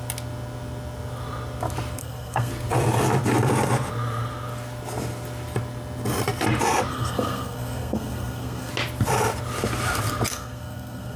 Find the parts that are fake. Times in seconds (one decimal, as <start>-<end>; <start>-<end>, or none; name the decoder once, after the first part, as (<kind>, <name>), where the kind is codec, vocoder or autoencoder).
2.0-2.5 (codec, SNAC); 6.9-8.7; 10.3-11.2